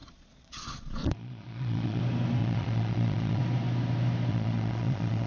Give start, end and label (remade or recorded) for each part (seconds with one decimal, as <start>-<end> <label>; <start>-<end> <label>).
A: 0.0-2.0 remade; 2.0-2.4 recorded; 2.4-3.4 remade; 3.4-4.3 recorded; 4.3-5.3 remade